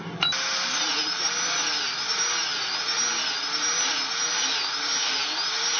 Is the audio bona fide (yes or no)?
yes